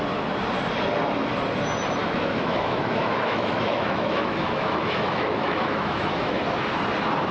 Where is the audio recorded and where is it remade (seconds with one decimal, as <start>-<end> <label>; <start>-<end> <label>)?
0.0-2.0 recorded; 2.0-6.4 remade; 6.4-7.3 recorded